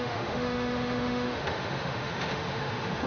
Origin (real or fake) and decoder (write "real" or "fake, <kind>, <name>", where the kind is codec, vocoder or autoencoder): fake, autoencoder, DAC-VAE